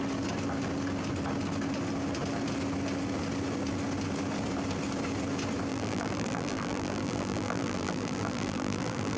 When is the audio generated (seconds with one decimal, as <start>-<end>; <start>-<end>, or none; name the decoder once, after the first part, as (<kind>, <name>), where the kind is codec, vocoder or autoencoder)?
5.7-9.2 (vocoder, BigVGAN v2)